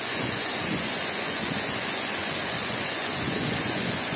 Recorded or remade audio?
remade